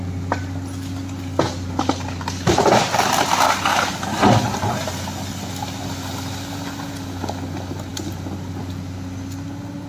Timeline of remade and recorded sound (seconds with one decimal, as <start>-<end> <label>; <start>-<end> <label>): 0.0-9.9 recorded